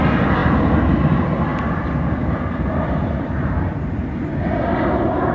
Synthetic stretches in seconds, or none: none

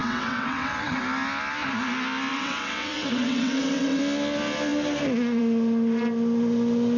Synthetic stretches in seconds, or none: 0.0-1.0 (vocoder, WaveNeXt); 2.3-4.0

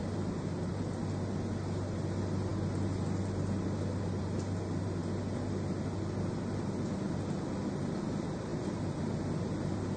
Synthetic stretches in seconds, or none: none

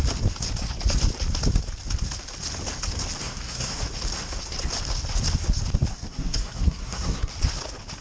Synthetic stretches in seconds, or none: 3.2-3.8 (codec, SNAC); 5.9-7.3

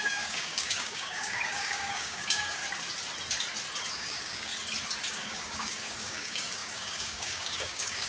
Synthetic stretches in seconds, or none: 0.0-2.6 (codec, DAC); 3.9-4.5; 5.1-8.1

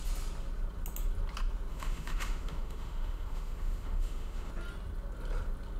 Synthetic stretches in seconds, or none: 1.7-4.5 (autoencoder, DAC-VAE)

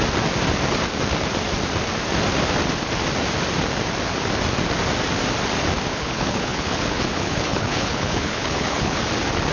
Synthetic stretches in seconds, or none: 5.9-9.0 (codec, HILCodec)